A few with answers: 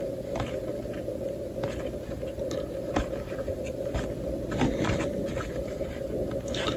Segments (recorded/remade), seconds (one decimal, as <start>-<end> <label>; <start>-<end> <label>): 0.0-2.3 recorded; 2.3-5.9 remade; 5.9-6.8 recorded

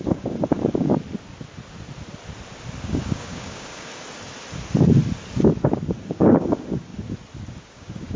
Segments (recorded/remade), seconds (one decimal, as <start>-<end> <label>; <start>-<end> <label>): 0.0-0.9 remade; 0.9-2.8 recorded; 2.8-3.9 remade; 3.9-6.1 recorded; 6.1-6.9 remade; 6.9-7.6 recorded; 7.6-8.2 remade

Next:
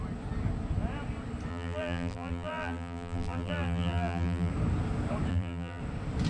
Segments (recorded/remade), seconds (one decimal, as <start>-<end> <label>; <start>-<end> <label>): 0.0-1.5 recorded; 1.5-4.5 remade; 4.5-5.3 recorded; 5.3-5.8 remade; 5.8-6.3 recorded